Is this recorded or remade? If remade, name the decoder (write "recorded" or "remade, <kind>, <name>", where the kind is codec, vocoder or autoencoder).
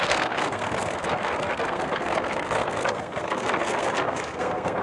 remade, codec, SNAC